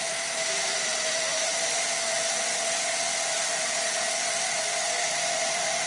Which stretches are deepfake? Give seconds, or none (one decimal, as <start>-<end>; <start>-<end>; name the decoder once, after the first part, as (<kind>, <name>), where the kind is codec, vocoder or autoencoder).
0.0-1.5 (vocoder, BigVGAN v2); 5.0-5.9